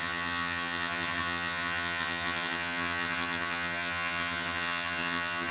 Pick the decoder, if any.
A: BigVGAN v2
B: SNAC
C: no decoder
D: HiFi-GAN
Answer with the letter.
D